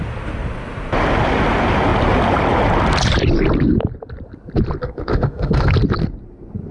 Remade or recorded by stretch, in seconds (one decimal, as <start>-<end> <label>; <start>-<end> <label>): 0.0-4.8 recorded; 4.8-5.7 remade; 5.7-6.7 recorded